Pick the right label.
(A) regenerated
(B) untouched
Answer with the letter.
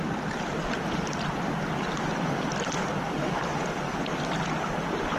B